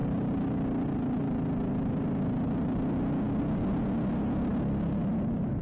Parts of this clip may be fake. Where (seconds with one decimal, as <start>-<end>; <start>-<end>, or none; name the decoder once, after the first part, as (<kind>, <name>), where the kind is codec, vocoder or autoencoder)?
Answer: none